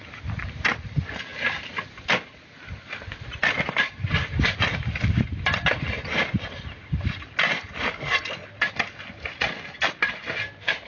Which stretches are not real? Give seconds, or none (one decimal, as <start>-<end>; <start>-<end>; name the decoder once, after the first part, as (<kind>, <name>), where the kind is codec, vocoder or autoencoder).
1.3-1.9 (vocoder, BigVGAN v2); 4.3-5.0